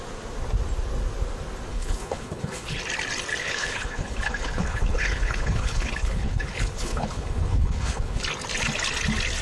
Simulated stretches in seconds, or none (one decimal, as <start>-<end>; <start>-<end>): 1.7-2.8; 3.4-8.2